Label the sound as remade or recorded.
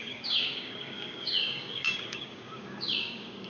remade